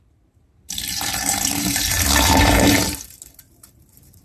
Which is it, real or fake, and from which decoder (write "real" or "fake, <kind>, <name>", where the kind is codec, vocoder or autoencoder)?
fake, vocoder, BigVGAN v2